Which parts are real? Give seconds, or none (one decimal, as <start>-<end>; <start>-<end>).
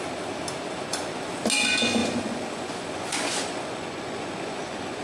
0.0-0.9; 1.4-2.0